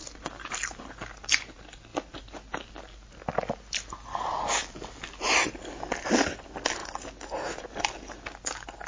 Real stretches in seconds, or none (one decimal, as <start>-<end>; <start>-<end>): 0.0-8.9